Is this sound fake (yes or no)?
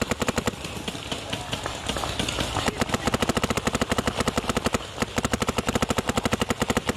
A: no